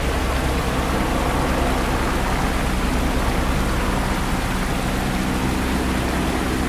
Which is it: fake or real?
real